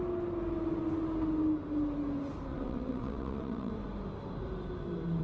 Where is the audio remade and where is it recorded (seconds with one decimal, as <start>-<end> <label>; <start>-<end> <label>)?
0.0-2.5 recorded; 2.5-3.7 remade; 3.7-5.2 recorded